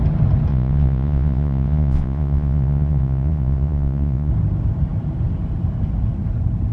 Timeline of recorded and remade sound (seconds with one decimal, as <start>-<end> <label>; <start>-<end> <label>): 0.0-0.5 recorded; 0.5-4.3 remade; 4.3-6.7 recorded